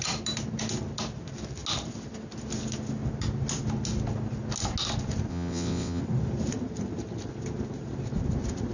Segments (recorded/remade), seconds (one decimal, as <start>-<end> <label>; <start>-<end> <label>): 0.0-5.3 recorded; 5.3-6.0 remade; 6.0-8.7 recorded